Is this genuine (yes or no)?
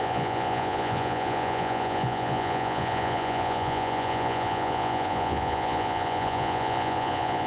no